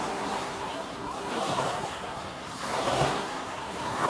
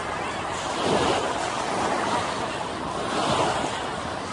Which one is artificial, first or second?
first